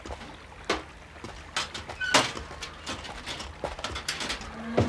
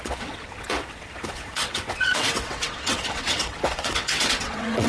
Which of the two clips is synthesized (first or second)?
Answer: second